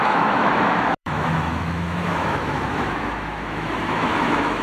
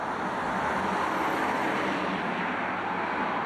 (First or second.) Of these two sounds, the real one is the second